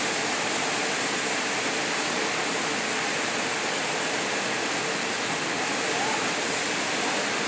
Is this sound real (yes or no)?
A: yes